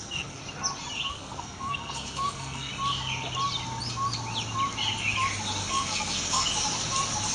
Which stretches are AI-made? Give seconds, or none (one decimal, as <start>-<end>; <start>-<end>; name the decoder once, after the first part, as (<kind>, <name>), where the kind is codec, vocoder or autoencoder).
0.0-0.4 (codec, SNAC); 1.1-2.7; 5.7-6.5